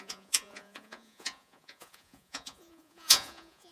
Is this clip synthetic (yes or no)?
yes